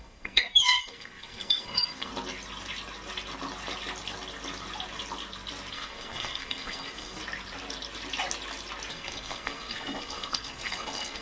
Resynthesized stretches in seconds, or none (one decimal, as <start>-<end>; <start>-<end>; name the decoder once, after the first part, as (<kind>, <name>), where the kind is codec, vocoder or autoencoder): 0.0-2.1 (codec, SNAC); 5.7-7.2; 8.9-11.2